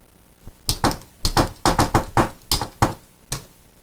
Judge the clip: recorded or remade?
recorded